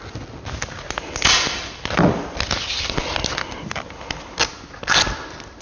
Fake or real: real